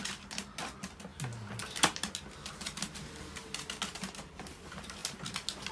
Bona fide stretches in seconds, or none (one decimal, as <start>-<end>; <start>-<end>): 0.0-5.7